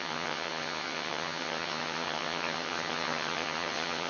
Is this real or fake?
fake